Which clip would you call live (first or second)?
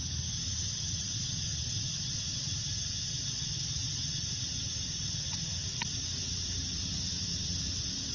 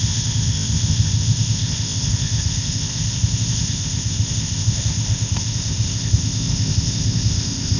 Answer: first